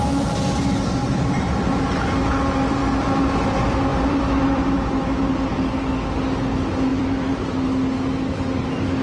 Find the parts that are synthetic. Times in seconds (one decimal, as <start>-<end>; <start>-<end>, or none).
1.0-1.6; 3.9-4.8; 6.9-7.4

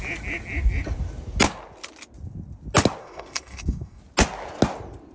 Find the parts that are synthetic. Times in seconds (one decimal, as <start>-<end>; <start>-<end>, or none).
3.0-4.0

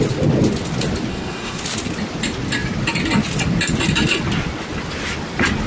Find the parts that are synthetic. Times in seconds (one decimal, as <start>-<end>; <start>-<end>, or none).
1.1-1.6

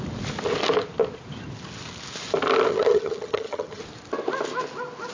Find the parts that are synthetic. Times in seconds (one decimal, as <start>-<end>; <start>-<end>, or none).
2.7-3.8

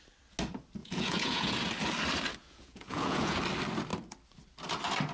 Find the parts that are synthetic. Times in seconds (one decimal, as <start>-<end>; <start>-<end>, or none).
0.8-1.6; 2.4-3.4

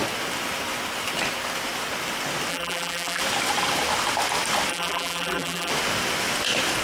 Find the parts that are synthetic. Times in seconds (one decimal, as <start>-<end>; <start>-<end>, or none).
2.5-3.2; 4.7-5.7